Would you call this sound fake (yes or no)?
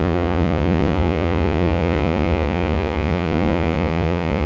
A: yes